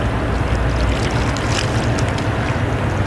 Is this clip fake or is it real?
real